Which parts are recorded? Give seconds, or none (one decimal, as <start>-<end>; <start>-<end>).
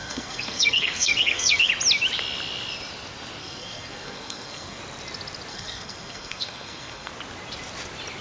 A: 1.7-3.4; 4.8-5.5; 7.1-8.2